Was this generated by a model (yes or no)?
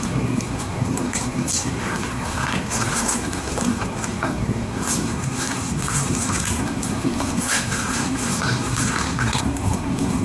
yes